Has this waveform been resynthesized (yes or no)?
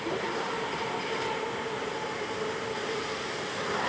no